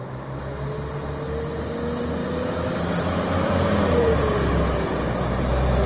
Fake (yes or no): no